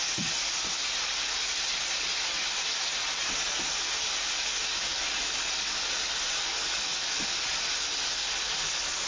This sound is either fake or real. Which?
real